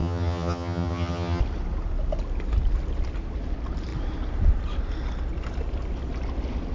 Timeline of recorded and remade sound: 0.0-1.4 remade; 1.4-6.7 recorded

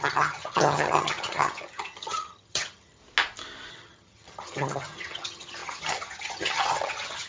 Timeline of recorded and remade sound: 0.0-3.0 remade; 3.0-3.7 recorded; 3.7-7.3 remade

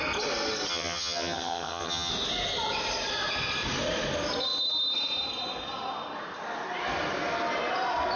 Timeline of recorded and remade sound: 0.0-0.7 recorded; 0.7-2.1 remade; 2.1-8.2 recorded

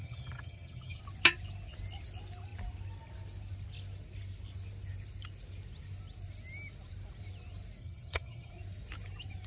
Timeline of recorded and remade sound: 0.0-1.0 remade; 1.0-7.8 recorded; 7.8-8.5 remade; 8.5-9.5 recorded

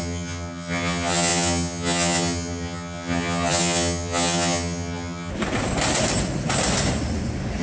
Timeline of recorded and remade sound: 0.0-5.3 remade; 5.3-7.6 recorded

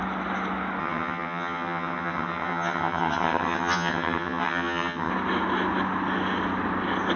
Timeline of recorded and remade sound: 0.0-0.8 recorded; 0.8-5.1 remade; 5.1-7.2 recorded

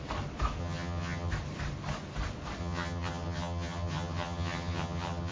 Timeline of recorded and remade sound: 0.0-0.6 recorded; 0.6-1.3 remade; 1.3-2.6 recorded; 2.6-5.3 remade